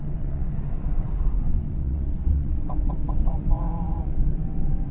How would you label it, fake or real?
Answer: fake